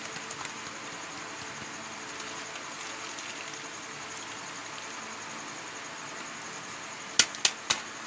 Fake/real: real